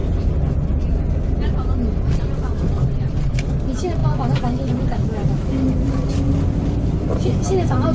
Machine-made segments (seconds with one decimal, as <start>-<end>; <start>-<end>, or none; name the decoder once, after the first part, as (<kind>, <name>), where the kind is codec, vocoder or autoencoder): 0.0-1.2 (vocoder, BigVGAN v2)